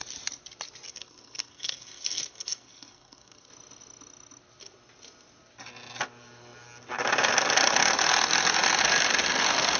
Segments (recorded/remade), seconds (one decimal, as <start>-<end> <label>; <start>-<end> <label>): 0.0-0.9 recorded; 0.9-3.5 remade; 3.5-9.8 recorded